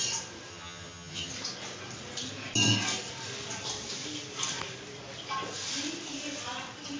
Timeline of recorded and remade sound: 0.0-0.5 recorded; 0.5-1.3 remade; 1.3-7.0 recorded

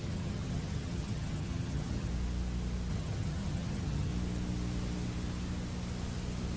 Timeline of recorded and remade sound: 0.0-2.1 remade; 2.1-2.9 recorded; 2.9-4.1 remade; 4.1-6.6 recorded

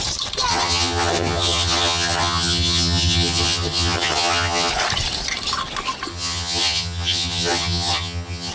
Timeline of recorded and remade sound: 0.0-0.5 recorded; 0.5-4.7 remade; 4.7-6.1 recorded; 6.1-8.5 remade

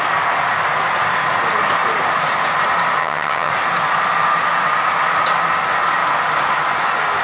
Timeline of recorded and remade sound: 0.0-3.0 recorded; 3.0-3.5 remade; 3.5-7.2 recorded

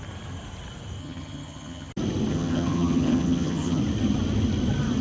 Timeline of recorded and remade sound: 0.0-1.0 recorded; 1.0-1.9 remade; 1.9-2.3 recorded; 2.3-3.8 remade; 3.8-5.0 recorded

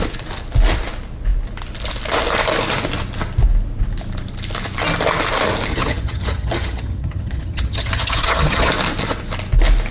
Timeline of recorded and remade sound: 0.0-5.7 recorded; 5.7-8.7 remade; 8.7-9.9 recorded

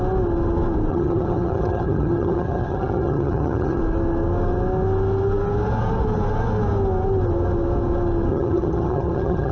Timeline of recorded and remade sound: 0.0-0.9 recorded; 0.9-3.8 remade; 3.8-8.3 recorded; 8.3-9.5 remade